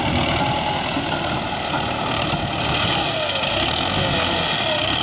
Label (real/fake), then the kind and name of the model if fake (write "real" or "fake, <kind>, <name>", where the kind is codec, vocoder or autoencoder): real